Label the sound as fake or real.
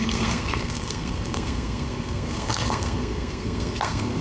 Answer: fake